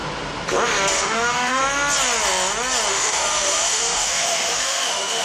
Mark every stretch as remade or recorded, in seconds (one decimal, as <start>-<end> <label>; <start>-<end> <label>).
0.0-0.9 recorded; 0.9-1.6 remade; 1.6-2.9 recorded; 2.9-5.2 remade